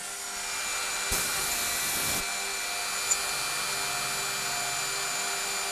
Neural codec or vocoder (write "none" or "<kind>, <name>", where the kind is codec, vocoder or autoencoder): none